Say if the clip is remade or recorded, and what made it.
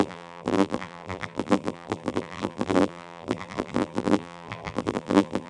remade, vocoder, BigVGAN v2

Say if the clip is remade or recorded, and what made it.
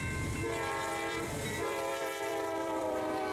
remade, vocoder, BigVGAN v2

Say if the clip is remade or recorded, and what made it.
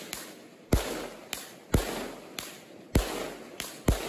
recorded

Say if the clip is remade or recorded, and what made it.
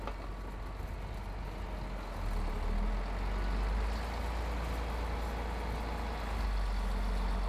recorded